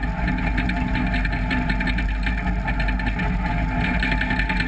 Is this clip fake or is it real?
real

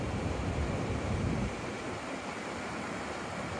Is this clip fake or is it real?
fake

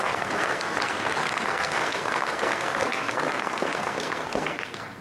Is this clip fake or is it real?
fake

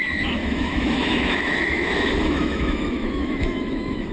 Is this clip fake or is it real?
fake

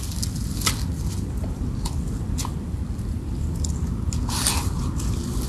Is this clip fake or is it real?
real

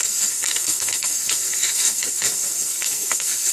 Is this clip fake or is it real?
fake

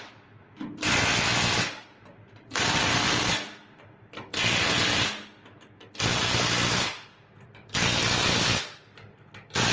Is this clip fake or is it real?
real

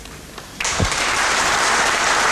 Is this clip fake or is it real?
fake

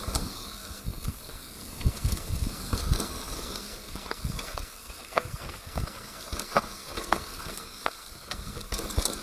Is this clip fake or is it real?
fake